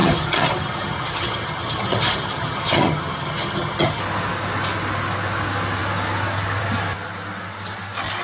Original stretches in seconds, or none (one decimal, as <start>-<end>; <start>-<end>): 4.0-8.2

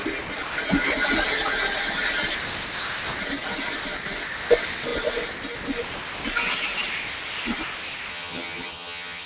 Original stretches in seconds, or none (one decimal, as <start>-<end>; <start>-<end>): 0.0-8.1

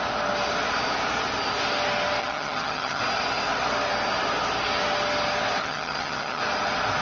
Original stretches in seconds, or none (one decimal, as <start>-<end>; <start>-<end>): 0.0-2.2; 3.0-5.6; 6.4-7.0

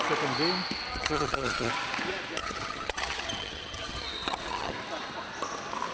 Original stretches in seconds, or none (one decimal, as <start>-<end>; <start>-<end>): 0.0-0.9; 1.7-2.4; 4.7-5.9